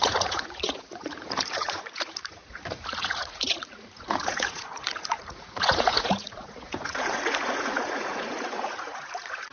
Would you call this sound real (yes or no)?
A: no